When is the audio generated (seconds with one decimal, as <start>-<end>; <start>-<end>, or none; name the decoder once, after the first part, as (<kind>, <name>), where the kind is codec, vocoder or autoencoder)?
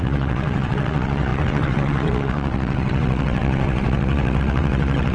0.0-5.1 (vocoder, WaveNeXt)